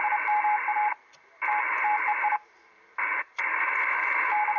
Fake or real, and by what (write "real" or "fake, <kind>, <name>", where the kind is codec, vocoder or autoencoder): real